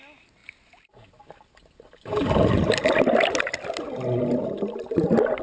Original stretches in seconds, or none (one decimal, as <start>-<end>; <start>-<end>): 0.0-5.4